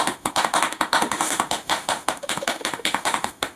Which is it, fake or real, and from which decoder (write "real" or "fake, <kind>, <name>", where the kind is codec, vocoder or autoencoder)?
fake, autoencoder, DAC-VAE